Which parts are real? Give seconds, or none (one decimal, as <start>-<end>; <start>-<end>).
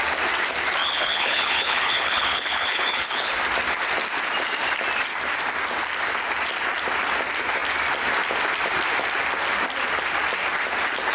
0.0-0.8; 3.3-11.1